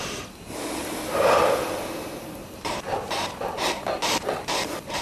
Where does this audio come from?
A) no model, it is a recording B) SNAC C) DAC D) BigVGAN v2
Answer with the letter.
A